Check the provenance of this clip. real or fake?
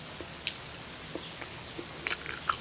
real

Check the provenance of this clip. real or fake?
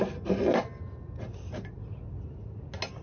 real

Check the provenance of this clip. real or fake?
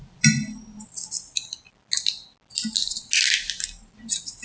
real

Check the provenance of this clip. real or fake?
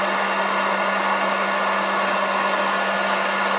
real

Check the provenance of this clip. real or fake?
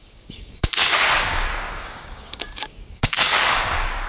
fake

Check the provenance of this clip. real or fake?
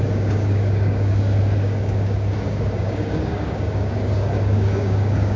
fake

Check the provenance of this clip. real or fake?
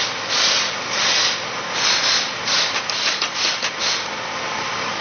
real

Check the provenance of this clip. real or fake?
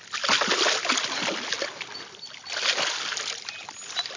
real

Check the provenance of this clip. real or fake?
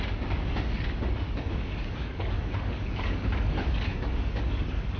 fake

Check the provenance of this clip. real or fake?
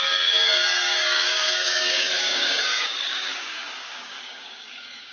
fake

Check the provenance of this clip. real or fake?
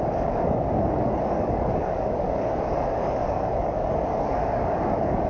fake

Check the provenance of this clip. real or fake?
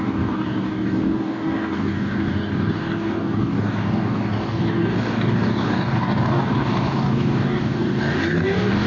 fake